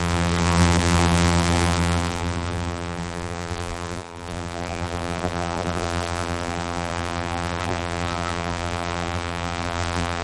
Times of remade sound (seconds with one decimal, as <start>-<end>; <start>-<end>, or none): 0.0-10.2

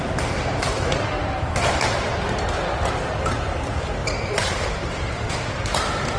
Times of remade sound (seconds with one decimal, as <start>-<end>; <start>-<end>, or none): 1.2-2.3; 4.0-5.3

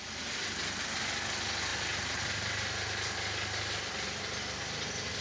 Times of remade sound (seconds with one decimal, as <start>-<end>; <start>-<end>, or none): none

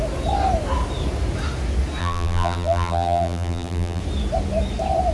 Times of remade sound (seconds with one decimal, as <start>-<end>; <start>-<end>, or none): 2.0-4.0

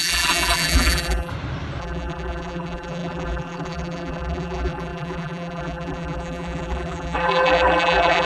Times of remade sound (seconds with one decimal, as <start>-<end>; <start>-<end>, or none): 0.0-1.3; 1.8-8.2

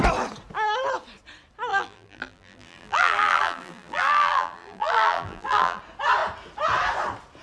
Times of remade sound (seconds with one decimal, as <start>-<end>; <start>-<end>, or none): 1.7-5.8

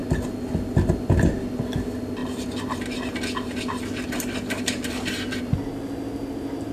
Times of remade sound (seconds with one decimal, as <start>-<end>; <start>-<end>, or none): none